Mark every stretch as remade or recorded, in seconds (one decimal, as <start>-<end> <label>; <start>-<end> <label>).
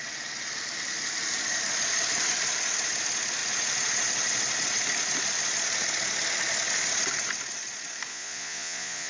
0.0-8.1 recorded; 8.1-9.1 remade